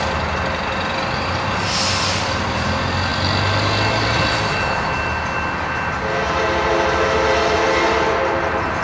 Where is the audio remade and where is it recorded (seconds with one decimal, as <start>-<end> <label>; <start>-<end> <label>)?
0.0-8.8 recorded